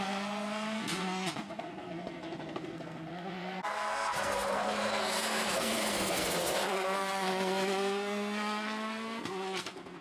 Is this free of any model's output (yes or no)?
no